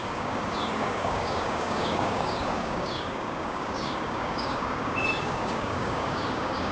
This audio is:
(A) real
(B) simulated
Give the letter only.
B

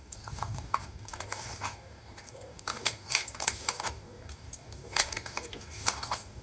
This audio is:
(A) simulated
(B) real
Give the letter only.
A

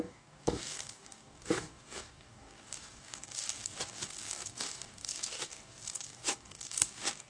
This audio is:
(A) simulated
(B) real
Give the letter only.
A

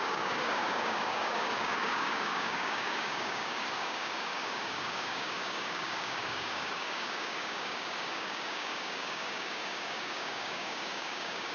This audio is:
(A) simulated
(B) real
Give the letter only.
A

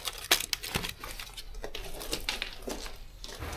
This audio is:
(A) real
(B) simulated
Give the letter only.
A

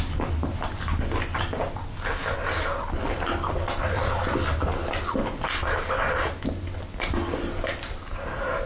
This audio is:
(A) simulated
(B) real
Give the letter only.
B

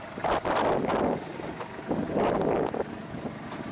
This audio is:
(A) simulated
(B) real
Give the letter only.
B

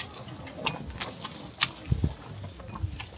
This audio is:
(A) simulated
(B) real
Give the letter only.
B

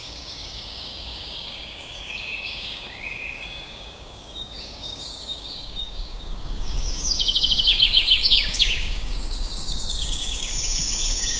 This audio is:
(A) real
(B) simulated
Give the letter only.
B